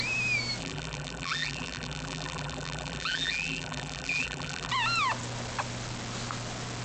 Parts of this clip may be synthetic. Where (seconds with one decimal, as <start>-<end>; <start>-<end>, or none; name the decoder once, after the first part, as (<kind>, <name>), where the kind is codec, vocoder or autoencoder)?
0.6-4.7 (vocoder, BigVGAN v2)

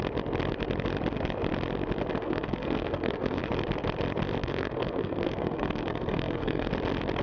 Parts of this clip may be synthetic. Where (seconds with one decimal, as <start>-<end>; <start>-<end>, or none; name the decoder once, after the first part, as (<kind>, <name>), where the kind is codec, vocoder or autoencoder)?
2.2-3.4 (codec, SNAC); 4.4-6.7

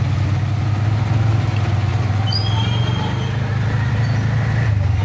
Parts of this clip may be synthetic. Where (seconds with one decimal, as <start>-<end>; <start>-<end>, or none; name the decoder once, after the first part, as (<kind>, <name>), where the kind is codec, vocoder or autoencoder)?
none

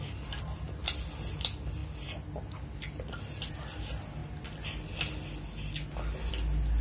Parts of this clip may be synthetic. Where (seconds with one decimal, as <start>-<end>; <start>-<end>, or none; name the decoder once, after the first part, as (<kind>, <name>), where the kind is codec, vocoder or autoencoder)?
none